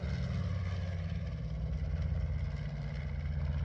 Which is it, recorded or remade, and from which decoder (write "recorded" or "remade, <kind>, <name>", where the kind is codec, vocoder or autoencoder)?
recorded